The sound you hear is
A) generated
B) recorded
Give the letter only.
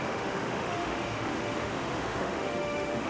A